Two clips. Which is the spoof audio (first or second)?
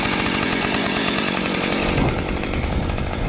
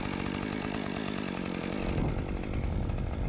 first